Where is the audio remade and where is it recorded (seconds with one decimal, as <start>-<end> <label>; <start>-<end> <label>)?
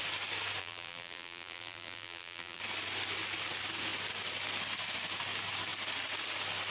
0.0-0.6 recorded; 0.6-2.6 remade; 2.6-6.7 recorded